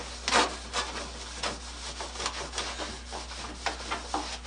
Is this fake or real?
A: real